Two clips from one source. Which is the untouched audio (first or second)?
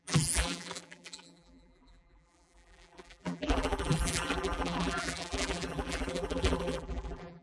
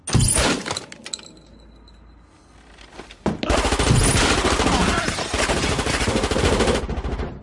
second